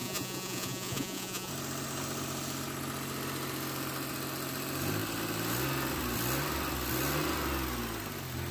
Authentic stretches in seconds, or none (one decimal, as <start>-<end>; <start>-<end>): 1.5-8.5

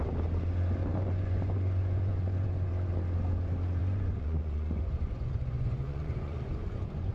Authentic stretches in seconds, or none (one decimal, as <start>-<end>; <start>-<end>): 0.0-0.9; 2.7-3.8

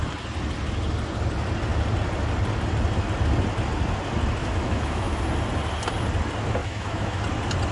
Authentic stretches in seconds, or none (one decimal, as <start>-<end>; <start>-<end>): 0.0-4.4; 5.2-6.6; 7.2-7.7

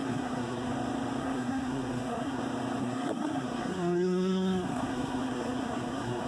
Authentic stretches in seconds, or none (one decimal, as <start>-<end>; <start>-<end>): 0.7-1.2; 2.4-2.8

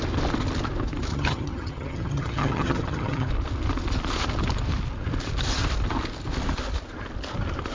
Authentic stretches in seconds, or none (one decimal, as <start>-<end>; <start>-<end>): 0.0-1.1; 3.3-7.7

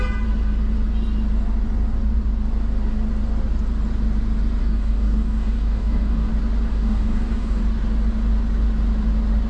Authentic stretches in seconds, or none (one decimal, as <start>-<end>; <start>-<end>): 0.0-4.6; 6.3-6.7; 7.6-9.5